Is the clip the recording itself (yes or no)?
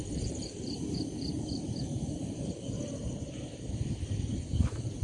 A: no